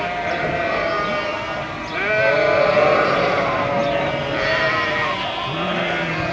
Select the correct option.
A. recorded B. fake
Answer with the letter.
A